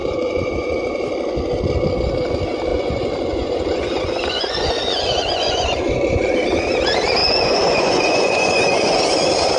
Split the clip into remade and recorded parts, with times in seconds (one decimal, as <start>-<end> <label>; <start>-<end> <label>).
0.0-0.8 remade; 0.8-2.7 recorded; 2.7-6.3 remade; 6.3-7.2 recorded; 7.2-9.0 remade; 9.0-9.6 recorded